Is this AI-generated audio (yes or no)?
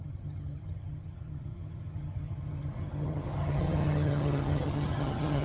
yes